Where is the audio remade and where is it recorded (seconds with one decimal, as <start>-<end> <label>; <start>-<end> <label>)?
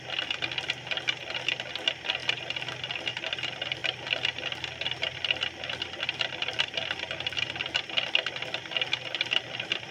0.0-3.8 recorded; 3.8-7.7 remade; 7.7-9.9 recorded